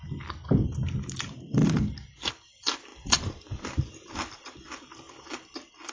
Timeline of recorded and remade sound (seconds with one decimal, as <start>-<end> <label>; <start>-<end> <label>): 0.0-5.9 recorded